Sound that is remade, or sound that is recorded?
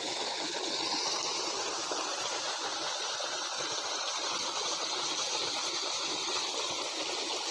recorded